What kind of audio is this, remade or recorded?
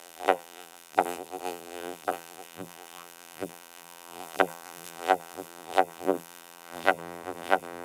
remade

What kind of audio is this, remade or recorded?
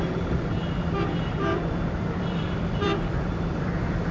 remade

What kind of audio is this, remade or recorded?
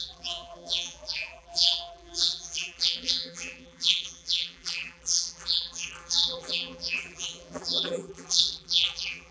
remade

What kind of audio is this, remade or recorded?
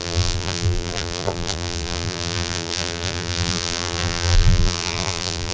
remade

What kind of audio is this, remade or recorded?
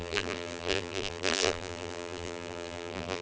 remade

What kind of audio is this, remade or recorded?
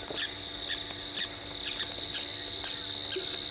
recorded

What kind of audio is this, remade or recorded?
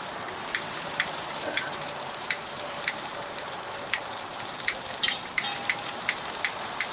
remade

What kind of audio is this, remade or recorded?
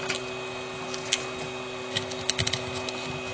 recorded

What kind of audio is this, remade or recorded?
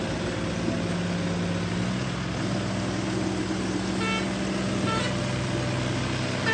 recorded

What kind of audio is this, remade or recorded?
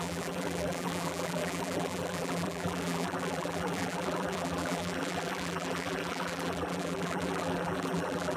remade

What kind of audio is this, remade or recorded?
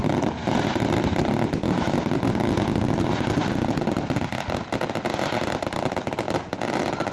recorded